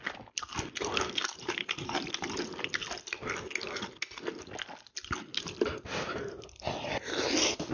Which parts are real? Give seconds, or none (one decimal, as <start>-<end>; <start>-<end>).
0.0-1.3; 2.1-5.3; 6.2-7.7